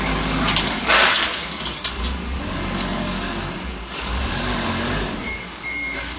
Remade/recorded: remade